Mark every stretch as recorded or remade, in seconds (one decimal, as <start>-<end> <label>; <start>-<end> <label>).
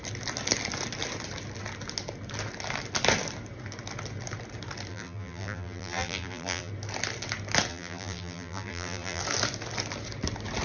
0.0-4.9 recorded; 4.9-6.7 remade; 6.7-7.7 recorded; 7.7-9.2 remade; 9.2-10.6 recorded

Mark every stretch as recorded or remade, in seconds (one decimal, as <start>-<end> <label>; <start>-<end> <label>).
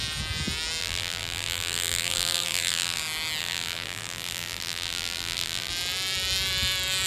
0.0-0.8 recorded; 0.8-3.0 remade; 3.0-3.4 recorded; 3.4-5.7 remade; 5.7-7.1 recorded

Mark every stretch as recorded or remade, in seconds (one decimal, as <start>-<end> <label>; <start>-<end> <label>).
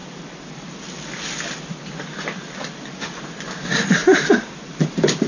0.0-3.2 recorded; 3.2-5.3 remade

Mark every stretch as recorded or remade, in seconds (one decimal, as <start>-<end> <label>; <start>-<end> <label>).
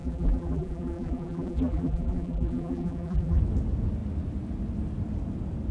0.0-3.4 remade; 3.4-5.7 recorded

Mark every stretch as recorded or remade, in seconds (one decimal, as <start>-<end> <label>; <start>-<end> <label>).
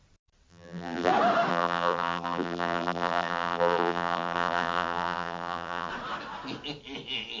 0.0-0.5 recorded; 0.5-1.1 remade; 1.1-1.5 recorded; 1.5-5.9 remade; 5.9-7.4 recorded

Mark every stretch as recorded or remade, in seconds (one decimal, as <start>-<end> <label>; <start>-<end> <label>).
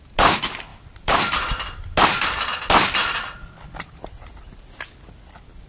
0.0-0.7 recorded; 0.7-1.9 remade; 1.9-5.7 recorded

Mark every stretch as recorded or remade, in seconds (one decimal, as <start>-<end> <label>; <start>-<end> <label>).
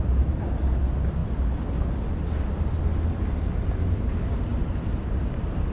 0.0-1.2 recorded; 1.2-1.8 remade; 1.8-5.7 recorded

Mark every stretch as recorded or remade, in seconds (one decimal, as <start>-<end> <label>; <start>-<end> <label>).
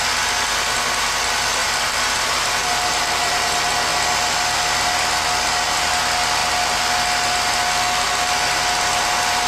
0.0-1.6 recorded; 1.6-3.5 remade; 3.5-9.5 recorded